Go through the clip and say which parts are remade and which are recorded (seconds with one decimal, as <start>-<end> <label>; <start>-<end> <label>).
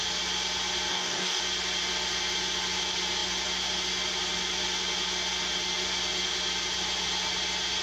0.0-0.9 recorded; 0.9-1.4 remade; 1.4-7.8 recorded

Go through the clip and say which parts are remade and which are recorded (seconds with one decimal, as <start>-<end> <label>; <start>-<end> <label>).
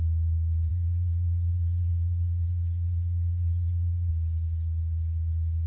0.0-0.7 recorded; 0.7-4.1 remade; 4.1-5.7 recorded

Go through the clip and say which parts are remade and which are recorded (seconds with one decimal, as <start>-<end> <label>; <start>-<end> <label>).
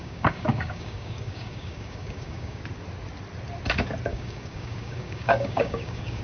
0.0-2.6 remade; 2.6-4.1 recorded; 4.1-6.2 remade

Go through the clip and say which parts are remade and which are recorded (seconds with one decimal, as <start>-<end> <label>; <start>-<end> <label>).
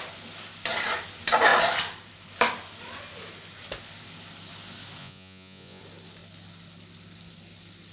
0.0-5.0 recorded; 5.0-5.8 remade; 5.8-7.9 recorded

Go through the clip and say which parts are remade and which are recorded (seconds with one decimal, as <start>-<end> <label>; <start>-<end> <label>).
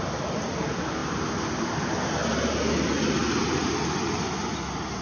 0.0-5.0 recorded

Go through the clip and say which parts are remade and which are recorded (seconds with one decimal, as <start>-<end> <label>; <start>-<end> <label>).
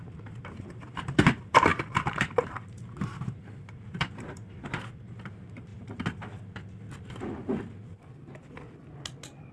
0.0-5.7 remade; 5.7-9.5 recorded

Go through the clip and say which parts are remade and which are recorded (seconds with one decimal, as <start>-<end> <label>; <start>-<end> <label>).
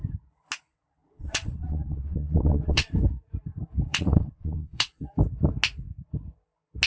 0.0-1.0 recorded; 1.0-2.9 remade; 2.9-3.9 recorded; 3.9-5.1 remade; 5.1-6.9 recorded